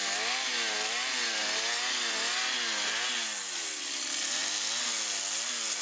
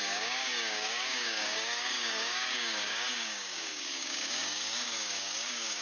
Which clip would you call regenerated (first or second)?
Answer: second